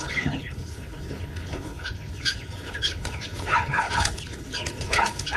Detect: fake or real fake